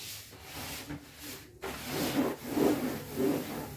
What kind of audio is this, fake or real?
real